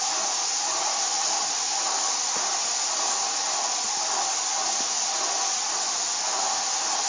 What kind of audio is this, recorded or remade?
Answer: recorded